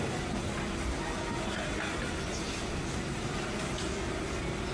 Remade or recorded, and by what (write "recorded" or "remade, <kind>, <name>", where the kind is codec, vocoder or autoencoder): recorded